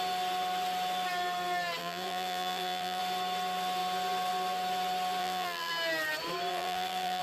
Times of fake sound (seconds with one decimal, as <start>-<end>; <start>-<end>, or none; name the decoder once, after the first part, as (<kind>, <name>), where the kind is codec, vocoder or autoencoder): 1.8-3.0 (vocoder, BigVGAN v2); 5.2-5.7; 6.5-7.2